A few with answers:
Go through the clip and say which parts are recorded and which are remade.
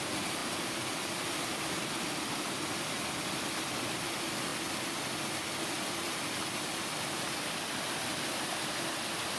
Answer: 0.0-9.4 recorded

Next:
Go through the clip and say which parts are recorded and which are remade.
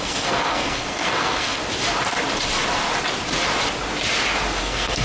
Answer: 0.0-1.6 remade; 1.6-4.6 recorded; 4.6-5.0 remade